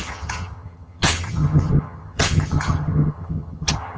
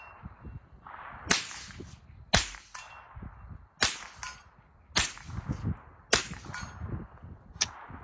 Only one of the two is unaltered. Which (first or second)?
second